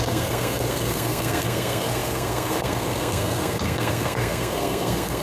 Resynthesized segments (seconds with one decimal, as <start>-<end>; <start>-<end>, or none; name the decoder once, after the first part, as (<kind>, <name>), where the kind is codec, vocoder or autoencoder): 0.0-5.2 (codec, SNAC)